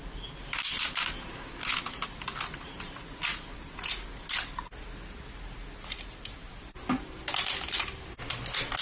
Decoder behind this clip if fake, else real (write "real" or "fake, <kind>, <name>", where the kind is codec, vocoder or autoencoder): real